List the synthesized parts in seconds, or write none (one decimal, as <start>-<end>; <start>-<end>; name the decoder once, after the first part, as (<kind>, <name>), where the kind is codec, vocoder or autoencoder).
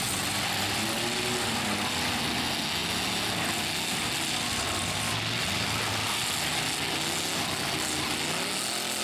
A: none